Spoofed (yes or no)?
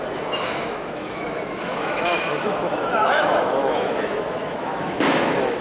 yes